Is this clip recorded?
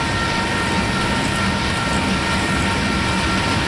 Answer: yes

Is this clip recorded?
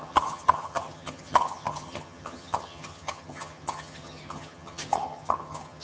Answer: no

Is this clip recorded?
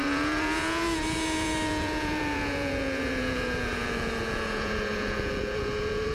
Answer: no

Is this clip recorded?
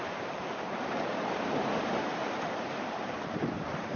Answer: no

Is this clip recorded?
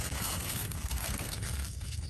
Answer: no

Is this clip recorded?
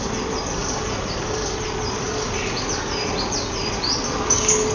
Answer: yes